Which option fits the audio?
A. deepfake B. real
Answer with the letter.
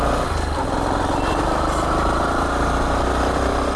B